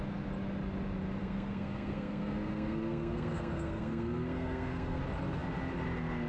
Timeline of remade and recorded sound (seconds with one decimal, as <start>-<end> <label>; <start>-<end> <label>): 0.0-1.2 recorded; 1.2-5.0 remade; 5.0-6.3 recorded